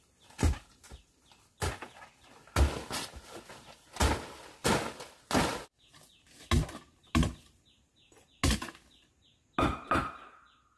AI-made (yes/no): no